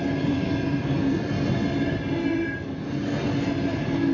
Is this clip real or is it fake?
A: real